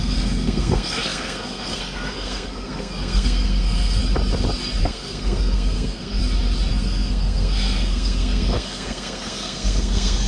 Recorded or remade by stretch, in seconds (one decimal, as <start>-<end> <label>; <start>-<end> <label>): 0.0-4.0 remade; 4.0-4.8 recorded; 4.8-6.2 remade; 6.2-6.7 recorded; 6.7-10.3 remade